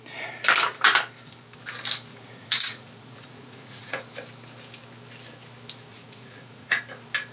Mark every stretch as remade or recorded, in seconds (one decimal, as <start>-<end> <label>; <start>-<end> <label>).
0.0-2.1 recorded; 2.1-4.0 remade; 4.0-5.9 recorded; 5.9-6.8 remade; 6.8-7.3 recorded